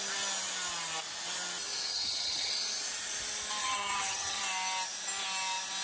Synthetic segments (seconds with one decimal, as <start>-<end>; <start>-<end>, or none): 1.9-2.5; 3.6-4.4